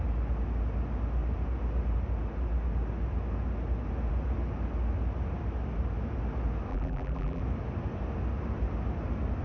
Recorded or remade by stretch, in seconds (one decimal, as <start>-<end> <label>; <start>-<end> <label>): 0.0-6.7 recorded; 6.7-7.4 remade; 7.4-9.4 recorded